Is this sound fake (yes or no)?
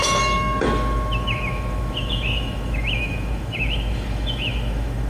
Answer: yes